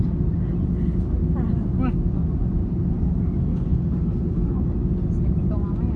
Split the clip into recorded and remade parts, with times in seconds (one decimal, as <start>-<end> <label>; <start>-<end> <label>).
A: 0.0-3.5 recorded; 3.5-4.6 remade; 4.6-6.0 recorded